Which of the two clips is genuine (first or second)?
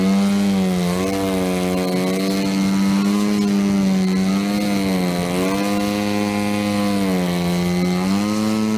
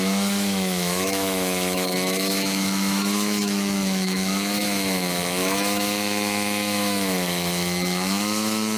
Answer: first